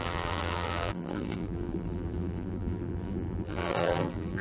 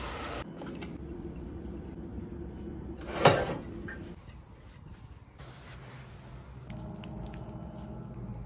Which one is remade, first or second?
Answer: first